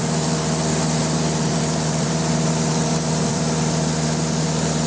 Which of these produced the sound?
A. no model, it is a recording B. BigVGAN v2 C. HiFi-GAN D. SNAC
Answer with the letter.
B